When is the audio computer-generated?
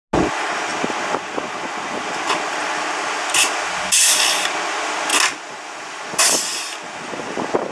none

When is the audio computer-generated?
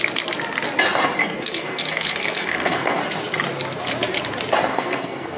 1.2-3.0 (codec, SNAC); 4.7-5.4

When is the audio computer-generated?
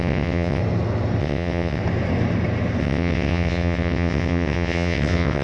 0.0-0.6 (vocoder, WaveNeXt); 1.2-1.8; 2.8-5.4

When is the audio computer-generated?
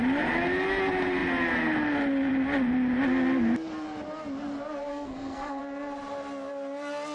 4.9-5.6 (codec, SNAC)